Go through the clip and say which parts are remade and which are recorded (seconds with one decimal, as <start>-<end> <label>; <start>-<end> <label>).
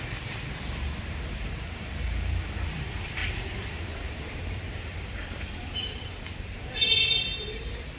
0.0-8.0 remade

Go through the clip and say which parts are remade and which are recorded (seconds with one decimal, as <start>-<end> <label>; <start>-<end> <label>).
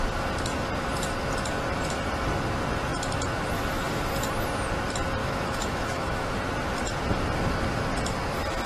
0.0-5.2 recorded; 5.2-6.3 remade; 6.3-8.7 recorded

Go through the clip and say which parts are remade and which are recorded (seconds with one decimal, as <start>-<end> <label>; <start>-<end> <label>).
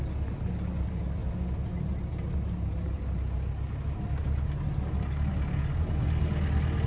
0.0-6.9 recorded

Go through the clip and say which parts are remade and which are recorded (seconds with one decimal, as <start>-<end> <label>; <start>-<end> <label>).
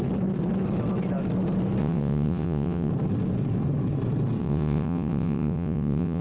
0.0-1.8 recorded; 1.8-2.9 remade; 2.9-4.4 recorded; 4.4-6.2 remade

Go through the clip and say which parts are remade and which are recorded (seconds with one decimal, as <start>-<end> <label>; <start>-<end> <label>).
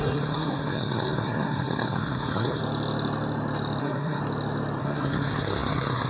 0.0-2.6 remade; 2.6-3.8 recorded; 3.8-4.2 remade; 4.2-4.8 recorded; 4.8-6.1 remade